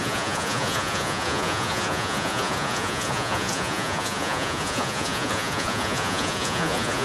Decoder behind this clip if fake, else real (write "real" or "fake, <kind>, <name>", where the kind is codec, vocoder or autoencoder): fake, vocoder, Vocos